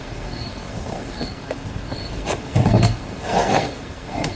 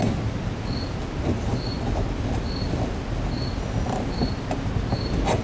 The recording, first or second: second